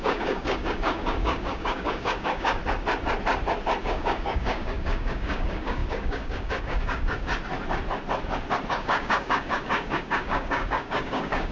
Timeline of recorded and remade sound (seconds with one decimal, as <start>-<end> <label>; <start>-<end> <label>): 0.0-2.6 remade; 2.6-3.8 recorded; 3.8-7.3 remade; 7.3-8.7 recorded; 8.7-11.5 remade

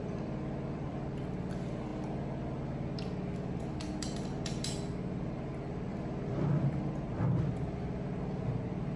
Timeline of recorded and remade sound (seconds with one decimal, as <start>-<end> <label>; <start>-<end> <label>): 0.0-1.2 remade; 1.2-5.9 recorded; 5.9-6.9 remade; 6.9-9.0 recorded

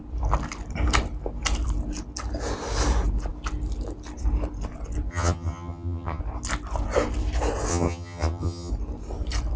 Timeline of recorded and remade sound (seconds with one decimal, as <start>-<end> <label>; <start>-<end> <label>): 0.0-5.1 recorded; 5.1-6.2 remade; 6.2-7.7 recorded; 7.7-8.7 remade; 8.7-9.6 recorded

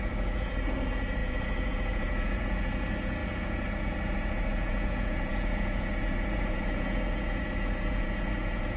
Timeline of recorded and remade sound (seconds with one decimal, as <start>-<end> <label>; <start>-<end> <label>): 0.0-8.8 remade